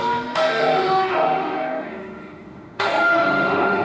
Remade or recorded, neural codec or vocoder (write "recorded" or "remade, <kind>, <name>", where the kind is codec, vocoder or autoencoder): remade, autoencoder, DAC-VAE